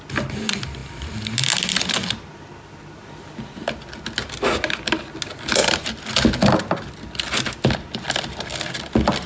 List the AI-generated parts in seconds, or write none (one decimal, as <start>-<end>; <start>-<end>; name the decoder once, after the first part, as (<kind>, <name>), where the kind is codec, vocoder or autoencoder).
none